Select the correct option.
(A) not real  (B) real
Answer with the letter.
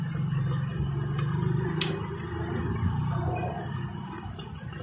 B